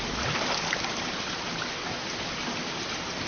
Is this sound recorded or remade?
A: recorded